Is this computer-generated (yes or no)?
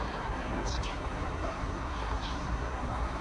yes